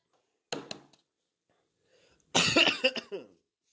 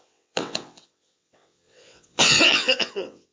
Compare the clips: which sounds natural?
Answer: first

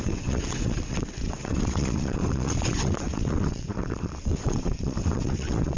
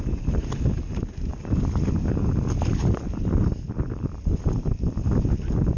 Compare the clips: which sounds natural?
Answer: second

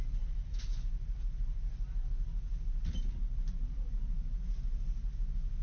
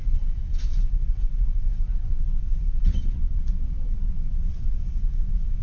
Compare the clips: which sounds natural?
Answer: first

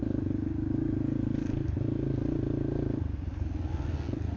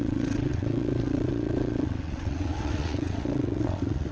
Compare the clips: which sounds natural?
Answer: first